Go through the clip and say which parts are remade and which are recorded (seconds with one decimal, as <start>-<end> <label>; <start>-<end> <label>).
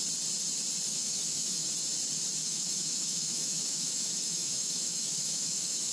0.0-0.9 recorded; 0.9-1.7 remade; 1.7-2.4 recorded; 2.4-5.9 remade